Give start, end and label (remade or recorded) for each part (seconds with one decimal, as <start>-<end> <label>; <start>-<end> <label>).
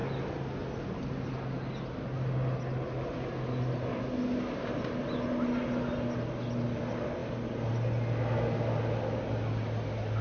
0.0-10.2 recorded